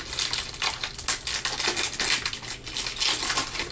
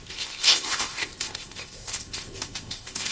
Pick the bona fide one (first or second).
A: first